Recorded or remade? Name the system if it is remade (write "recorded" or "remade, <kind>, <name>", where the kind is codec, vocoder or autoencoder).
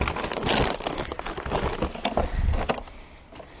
recorded